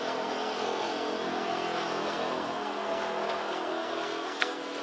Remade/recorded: remade